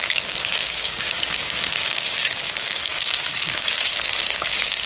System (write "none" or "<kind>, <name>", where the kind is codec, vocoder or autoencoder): codec, DAC